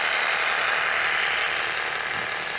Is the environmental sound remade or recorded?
recorded